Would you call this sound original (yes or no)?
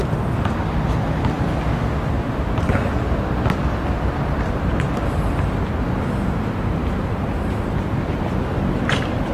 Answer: yes